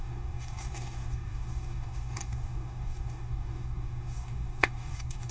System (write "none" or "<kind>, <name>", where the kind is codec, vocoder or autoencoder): codec, DAC